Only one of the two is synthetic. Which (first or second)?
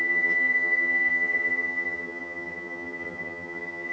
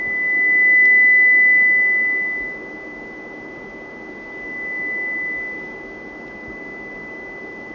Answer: first